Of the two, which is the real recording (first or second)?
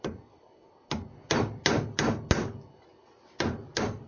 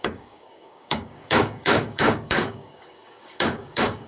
first